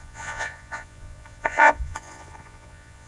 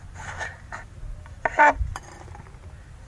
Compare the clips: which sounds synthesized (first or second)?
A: first